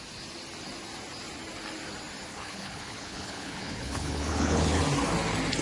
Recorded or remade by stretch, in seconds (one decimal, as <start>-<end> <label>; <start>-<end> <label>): 0.0-2.3 recorded; 2.3-4.8 remade; 4.8-5.6 recorded